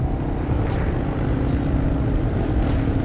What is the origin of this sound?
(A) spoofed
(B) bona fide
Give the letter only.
B